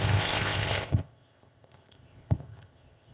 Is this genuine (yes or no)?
no